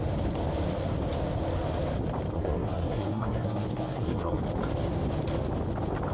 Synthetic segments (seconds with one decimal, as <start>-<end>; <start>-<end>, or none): 2.3-4.4